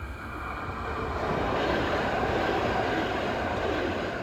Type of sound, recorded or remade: recorded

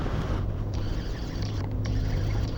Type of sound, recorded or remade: remade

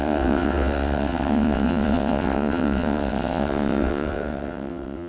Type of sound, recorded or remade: remade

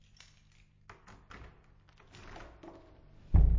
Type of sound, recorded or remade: recorded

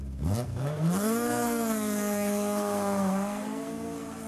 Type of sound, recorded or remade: remade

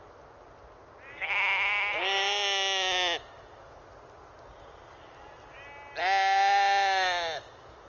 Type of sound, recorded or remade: recorded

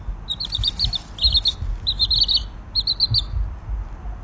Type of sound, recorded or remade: recorded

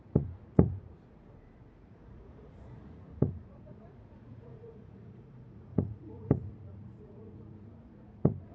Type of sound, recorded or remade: remade